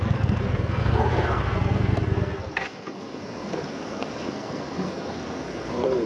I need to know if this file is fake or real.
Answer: fake